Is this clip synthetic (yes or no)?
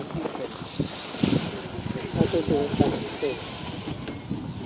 no